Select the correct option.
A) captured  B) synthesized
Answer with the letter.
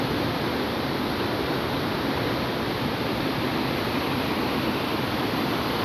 A